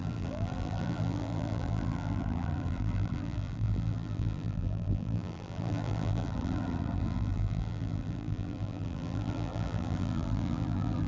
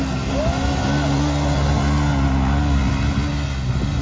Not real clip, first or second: first